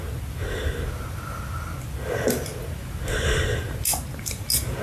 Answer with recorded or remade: recorded